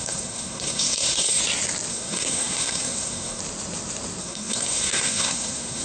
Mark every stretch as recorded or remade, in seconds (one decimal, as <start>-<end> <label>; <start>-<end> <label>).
0.0-1.4 remade; 1.4-1.9 recorded; 1.9-3.4 remade; 3.4-4.2 recorded; 4.2-5.8 remade